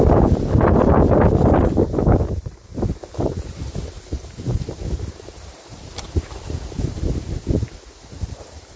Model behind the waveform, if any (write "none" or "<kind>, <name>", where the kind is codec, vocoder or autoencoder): none